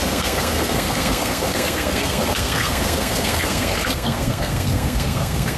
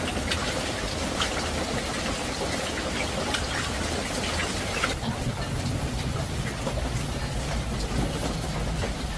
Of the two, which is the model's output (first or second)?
first